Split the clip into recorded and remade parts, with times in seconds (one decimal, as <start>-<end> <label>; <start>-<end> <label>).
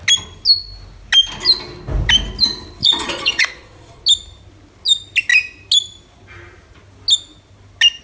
0.0-2.8 recorded; 2.8-4.0 remade; 4.0-8.0 recorded